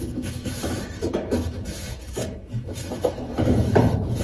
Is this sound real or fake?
fake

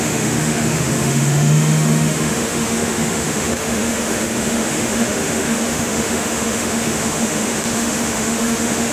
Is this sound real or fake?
fake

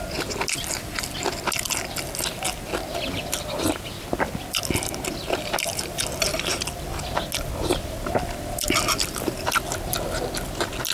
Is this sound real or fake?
real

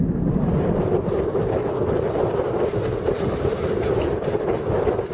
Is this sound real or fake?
real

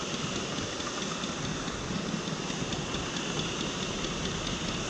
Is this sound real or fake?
real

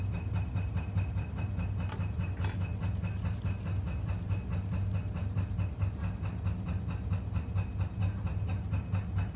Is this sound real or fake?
real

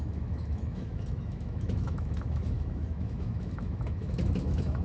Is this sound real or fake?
fake